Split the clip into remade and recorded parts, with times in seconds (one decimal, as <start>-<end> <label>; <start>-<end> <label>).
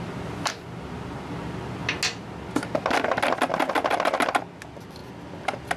0.0-5.8 recorded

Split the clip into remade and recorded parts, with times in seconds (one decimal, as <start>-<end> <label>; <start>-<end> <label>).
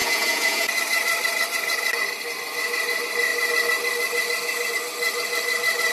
0.0-0.7 remade; 0.7-5.9 recorded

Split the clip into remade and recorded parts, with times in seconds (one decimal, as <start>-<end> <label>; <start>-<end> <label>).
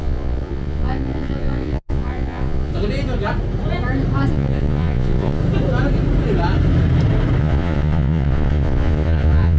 0.0-2.7 remade; 2.7-4.3 recorded; 4.3-5.4 remade; 5.4-7.4 recorded; 7.4-9.6 remade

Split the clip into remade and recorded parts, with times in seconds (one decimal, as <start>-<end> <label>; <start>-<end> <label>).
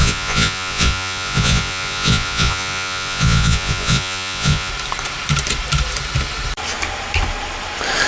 0.0-4.7 remade; 4.7-8.1 recorded